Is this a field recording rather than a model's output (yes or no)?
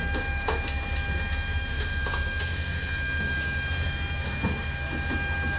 no